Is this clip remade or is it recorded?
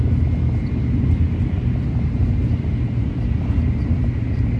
recorded